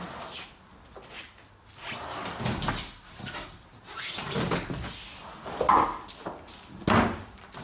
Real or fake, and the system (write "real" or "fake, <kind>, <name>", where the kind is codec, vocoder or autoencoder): real